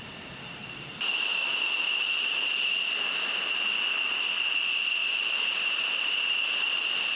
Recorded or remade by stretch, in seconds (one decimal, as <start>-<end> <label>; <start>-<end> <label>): 0.0-0.6 recorded; 0.6-2.3 remade; 2.3-5.0 recorded; 5.0-6.1 remade; 6.1-7.2 recorded